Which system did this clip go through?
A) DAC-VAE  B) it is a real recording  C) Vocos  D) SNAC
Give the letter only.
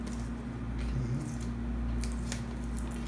B